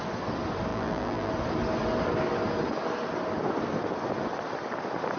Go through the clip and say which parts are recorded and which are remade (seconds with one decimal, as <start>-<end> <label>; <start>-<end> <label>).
0.0-0.7 recorded; 0.7-1.3 remade; 1.3-5.2 recorded